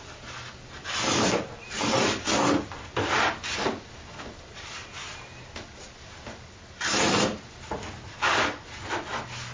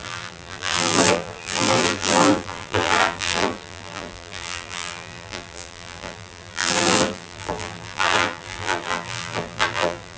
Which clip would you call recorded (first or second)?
first